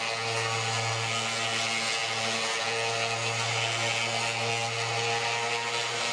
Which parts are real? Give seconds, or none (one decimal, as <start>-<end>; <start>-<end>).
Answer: 0.0-6.1